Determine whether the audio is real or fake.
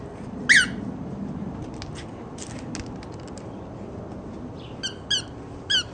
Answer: real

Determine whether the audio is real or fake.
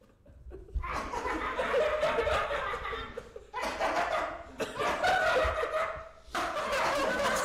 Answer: real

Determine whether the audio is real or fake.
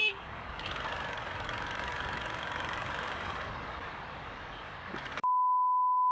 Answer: fake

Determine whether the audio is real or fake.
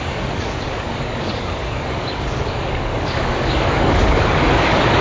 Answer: fake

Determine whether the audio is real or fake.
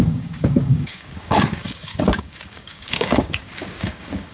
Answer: fake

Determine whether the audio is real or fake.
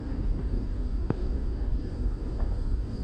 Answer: fake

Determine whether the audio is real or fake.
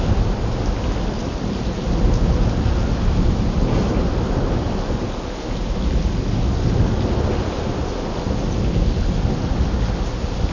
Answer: real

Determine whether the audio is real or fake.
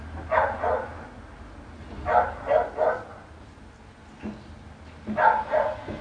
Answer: real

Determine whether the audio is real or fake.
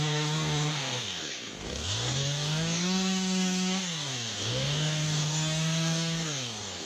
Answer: fake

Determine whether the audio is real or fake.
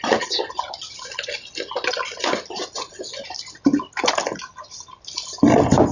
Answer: real